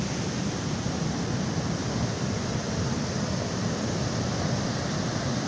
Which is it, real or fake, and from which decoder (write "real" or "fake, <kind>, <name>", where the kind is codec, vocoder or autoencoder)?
real